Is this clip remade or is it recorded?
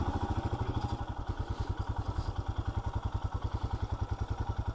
recorded